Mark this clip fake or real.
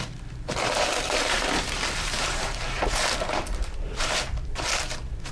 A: fake